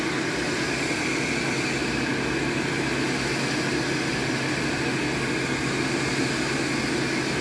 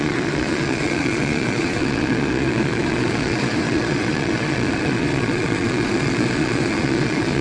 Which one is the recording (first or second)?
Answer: first